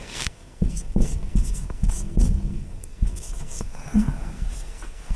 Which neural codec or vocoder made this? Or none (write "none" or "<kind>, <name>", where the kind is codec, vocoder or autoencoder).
codec, SNAC